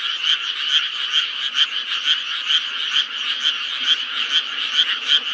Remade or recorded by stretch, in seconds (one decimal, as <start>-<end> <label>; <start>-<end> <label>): 0.0-5.3 recorded